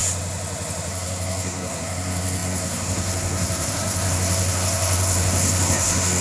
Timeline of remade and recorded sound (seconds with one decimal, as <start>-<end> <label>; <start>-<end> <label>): 0.0-0.9 recorded; 0.9-6.2 remade